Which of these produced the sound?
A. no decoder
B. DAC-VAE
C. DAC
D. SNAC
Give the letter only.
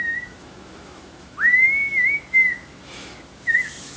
B